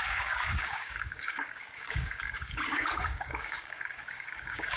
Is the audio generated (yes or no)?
yes